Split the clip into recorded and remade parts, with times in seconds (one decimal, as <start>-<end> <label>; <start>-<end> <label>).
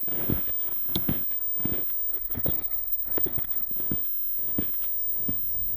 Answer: 0.0-2.1 recorded; 2.1-3.7 remade; 3.7-5.8 recorded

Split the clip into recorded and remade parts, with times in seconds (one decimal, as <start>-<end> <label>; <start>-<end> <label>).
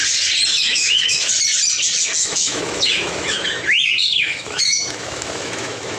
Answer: 0.0-0.5 recorded; 0.5-1.3 remade; 1.3-2.2 recorded; 2.2-6.0 remade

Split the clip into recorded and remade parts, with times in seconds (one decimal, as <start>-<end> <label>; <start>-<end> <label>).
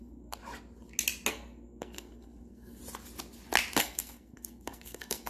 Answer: 0.0-0.4 remade; 0.4-1.3 recorded; 1.3-2.8 remade; 2.8-3.8 recorded; 3.8-5.3 remade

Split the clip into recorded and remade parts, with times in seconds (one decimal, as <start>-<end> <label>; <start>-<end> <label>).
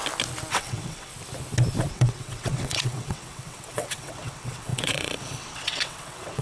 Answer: 0.0-0.5 recorded; 0.5-1.1 remade; 1.1-1.9 recorded; 1.9-6.4 remade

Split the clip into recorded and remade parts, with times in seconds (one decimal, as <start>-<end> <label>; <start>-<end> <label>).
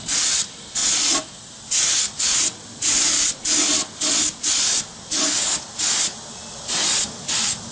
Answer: 0.0-7.7 recorded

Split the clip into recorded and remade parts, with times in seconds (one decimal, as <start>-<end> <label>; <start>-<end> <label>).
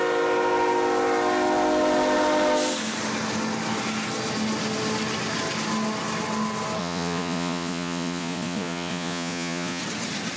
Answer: 0.0-6.8 recorded; 6.8-9.8 remade; 9.8-10.4 recorded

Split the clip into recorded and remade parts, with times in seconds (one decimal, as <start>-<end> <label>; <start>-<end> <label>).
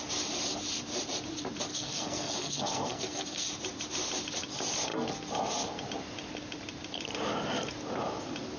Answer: 0.0-1.7 recorded; 1.7-3.5 remade; 3.5-8.6 recorded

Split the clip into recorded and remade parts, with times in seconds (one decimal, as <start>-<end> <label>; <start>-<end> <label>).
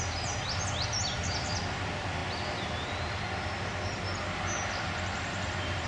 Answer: 0.0-5.9 recorded